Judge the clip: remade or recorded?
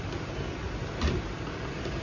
recorded